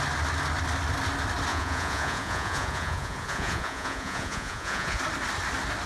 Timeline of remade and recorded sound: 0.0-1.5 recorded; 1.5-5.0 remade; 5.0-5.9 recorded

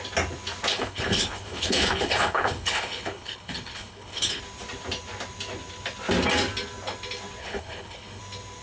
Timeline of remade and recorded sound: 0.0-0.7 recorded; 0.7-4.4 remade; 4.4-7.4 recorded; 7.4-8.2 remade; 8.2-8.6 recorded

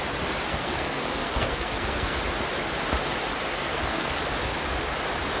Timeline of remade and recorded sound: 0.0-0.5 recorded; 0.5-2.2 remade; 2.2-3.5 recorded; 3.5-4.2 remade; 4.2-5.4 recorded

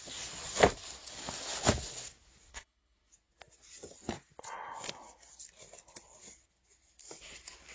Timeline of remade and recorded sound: 0.0-2.5 recorded; 2.5-3.1 remade; 3.1-7.7 recorded

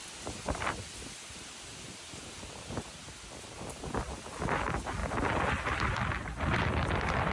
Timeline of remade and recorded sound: 0.0-7.3 recorded